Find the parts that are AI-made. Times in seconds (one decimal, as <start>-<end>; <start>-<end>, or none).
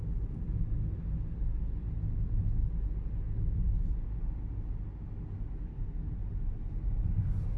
none